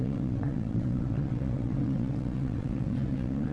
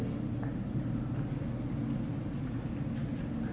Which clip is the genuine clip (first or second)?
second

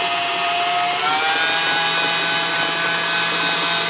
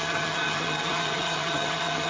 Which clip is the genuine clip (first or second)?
first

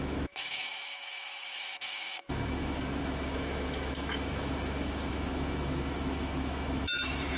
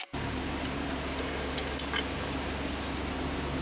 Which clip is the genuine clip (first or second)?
second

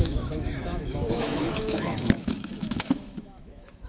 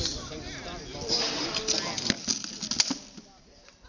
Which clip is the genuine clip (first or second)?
second